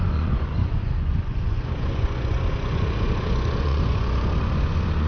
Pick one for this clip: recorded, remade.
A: remade